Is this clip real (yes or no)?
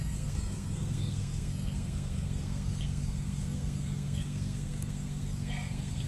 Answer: no